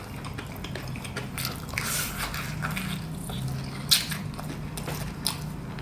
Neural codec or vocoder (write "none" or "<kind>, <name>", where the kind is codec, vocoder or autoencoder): none